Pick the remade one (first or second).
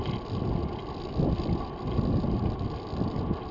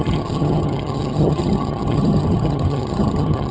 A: second